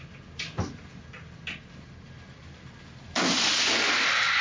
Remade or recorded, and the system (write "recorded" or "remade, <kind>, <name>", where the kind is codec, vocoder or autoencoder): recorded